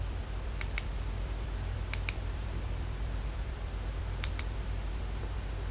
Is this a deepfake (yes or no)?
yes